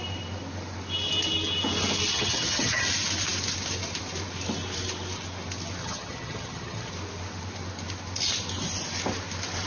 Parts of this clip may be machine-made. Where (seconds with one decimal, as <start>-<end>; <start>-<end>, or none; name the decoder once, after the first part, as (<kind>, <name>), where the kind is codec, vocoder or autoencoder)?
2.1-2.8 (vocoder, HiFi-GAN); 5.8-6.9

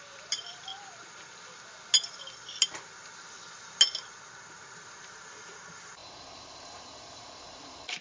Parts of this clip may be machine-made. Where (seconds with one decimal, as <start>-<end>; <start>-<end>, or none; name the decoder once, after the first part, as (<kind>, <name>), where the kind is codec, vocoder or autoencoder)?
0.0-0.7 (vocoder, BigVGAN v2); 4.5-8.0